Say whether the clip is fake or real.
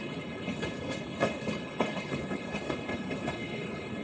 fake